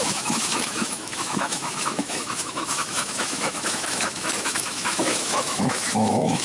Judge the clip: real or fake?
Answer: fake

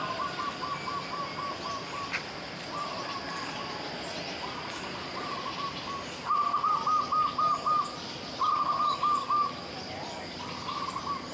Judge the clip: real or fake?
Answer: real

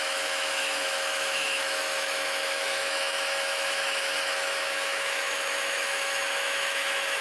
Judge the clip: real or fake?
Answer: fake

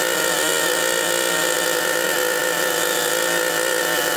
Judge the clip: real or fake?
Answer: real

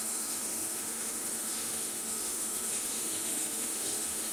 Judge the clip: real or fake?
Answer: fake